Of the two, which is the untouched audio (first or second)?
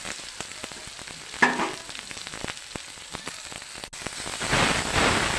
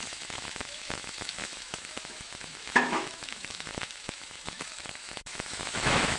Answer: first